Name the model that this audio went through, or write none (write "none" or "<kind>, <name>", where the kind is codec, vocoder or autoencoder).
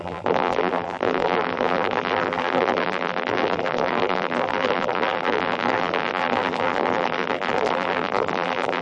vocoder, BigVGAN v2